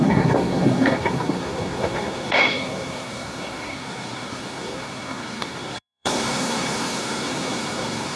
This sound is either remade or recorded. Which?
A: remade